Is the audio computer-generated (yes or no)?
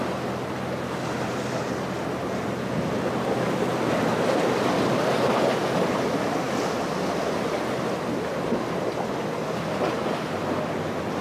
no